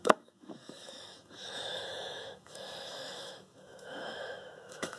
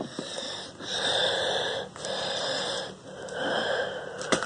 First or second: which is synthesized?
first